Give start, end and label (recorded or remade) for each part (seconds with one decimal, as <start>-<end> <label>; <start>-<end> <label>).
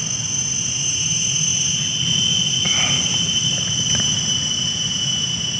0.0-5.6 recorded